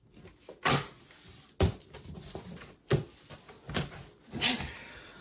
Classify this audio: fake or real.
real